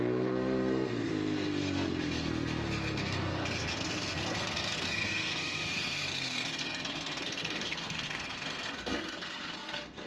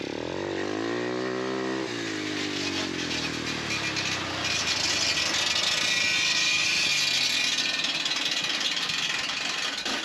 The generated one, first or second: first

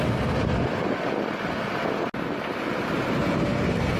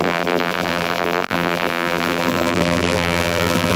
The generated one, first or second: second